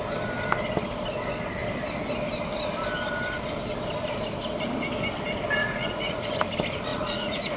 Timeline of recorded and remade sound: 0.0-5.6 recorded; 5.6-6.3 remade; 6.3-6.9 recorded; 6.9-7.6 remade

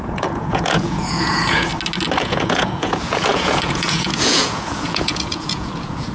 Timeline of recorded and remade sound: 0.0-1.7 remade; 1.7-2.2 recorded; 2.2-6.1 remade

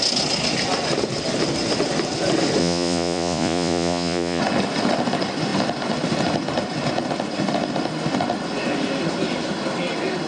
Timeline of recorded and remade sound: 0.0-2.6 recorded; 2.6-4.4 remade; 4.4-10.3 recorded

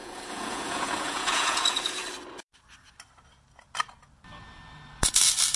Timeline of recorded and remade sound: 0.0-2.0 remade; 2.0-5.6 recorded

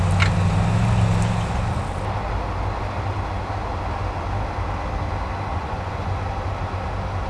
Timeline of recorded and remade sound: 0.0-5.5 recorded; 5.5-6.2 remade; 6.2-7.3 recorded

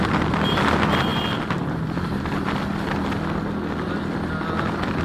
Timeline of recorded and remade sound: 0.0-5.0 recorded

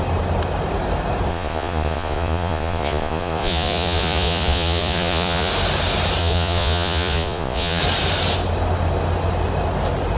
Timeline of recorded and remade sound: 0.0-1.3 recorded; 1.3-5.5 remade; 5.5-6.2 recorded; 6.2-7.8 remade; 7.8-10.2 recorded